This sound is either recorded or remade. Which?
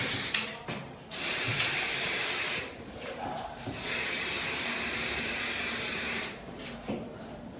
remade